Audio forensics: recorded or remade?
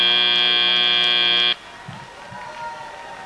recorded